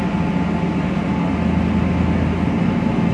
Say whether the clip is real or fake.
real